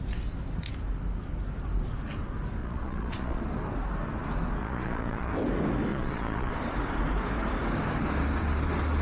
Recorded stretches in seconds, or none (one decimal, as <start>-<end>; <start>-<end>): 0.0-2.6; 3.4-4.6; 5.3-5.9; 6.5-9.0